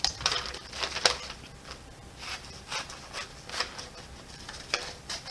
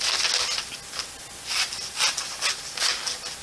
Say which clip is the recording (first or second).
second